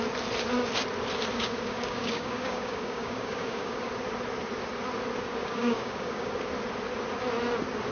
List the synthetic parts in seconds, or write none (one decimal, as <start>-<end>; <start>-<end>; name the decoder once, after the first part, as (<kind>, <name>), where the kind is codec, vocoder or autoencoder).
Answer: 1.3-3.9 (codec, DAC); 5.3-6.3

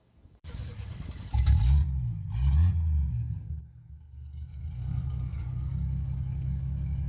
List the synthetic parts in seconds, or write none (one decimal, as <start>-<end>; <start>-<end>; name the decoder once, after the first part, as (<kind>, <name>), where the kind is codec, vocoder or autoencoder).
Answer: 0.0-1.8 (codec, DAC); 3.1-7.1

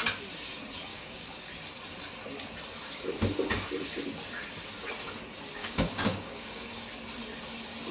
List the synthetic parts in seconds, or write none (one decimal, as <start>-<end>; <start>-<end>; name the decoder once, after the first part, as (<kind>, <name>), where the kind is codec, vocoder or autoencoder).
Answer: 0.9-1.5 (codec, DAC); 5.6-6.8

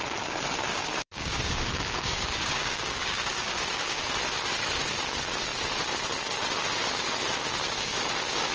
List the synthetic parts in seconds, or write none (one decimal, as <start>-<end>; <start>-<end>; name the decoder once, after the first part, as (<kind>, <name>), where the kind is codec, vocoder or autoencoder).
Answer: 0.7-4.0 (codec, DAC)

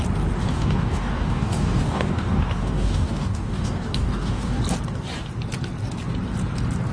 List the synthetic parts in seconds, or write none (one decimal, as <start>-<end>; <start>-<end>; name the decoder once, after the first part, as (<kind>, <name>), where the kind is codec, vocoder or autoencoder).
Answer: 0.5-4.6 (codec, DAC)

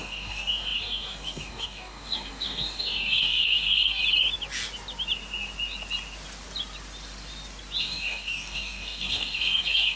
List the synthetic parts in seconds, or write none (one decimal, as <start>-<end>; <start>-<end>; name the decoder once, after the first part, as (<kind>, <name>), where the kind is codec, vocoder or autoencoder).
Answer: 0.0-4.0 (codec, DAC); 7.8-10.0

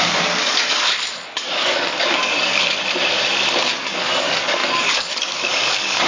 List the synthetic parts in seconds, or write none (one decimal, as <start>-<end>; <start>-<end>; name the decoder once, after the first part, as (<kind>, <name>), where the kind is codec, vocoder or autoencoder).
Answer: 0.0-2.8 (codec, DAC); 3.6-6.1